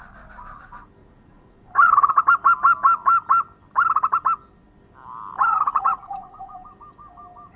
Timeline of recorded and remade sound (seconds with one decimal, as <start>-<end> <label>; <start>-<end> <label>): 0.0-1.0 recorded; 1.0-2.1 remade; 2.1-5.5 recorded; 5.5-6.7 remade; 6.7-7.6 recorded